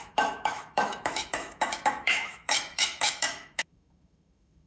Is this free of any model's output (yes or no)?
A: no